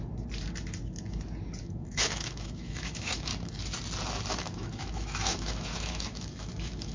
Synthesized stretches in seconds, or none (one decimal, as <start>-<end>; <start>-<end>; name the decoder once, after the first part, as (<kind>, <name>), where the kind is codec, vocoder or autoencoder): 1.6-3.3 (autoencoder, DAC-VAE); 4.3-6.9